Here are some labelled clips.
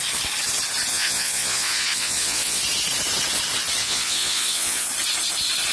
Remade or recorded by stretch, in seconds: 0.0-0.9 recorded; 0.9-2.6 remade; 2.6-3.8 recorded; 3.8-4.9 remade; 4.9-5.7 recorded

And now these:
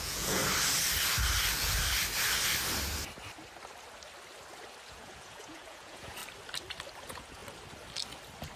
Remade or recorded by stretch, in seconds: 0.0-0.4 remade; 0.4-4.9 recorded; 4.9-6.2 remade; 6.2-7.0 recorded; 7.0-7.4 remade; 7.4-8.6 recorded

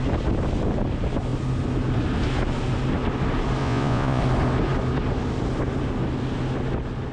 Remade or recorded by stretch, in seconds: 0.0-3.6 recorded; 3.6-4.2 remade; 4.2-7.1 recorded

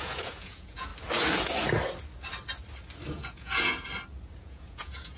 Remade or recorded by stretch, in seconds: 0.0-0.9 remade; 0.9-3.1 recorded; 3.1-3.9 remade; 3.9-4.4 recorded; 4.4-5.2 remade

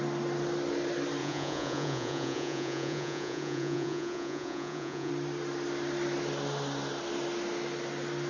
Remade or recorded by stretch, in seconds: 0.0-1.2 recorded; 1.2-5.1 remade; 5.1-8.3 recorded